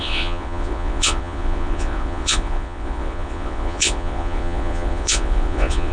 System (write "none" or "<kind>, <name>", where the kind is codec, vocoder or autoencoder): vocoder, Vocos